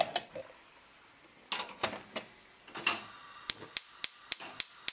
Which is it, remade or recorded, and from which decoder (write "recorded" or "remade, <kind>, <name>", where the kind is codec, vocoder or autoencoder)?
recorded